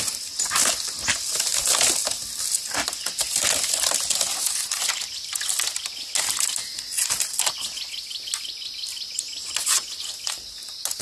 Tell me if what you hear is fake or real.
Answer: real